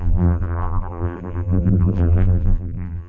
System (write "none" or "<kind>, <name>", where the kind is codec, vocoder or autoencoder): vocoder, BigVGAN v2